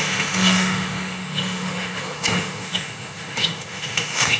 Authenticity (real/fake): fake